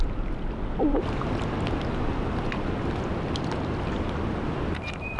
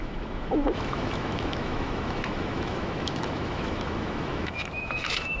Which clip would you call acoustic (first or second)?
first